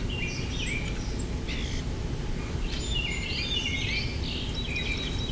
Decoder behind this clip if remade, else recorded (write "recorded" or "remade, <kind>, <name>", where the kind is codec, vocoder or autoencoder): recorded